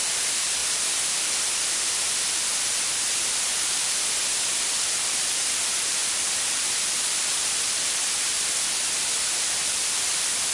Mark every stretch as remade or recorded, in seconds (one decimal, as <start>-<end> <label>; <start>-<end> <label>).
0.0-0.6 remade; 0.6-5.5 recorded; 5.5-6.0 remade; 6.0-6.6 recorded; 6.6-8.3 remade; 8.3-9.1 recorded; 9.1-10.5 remade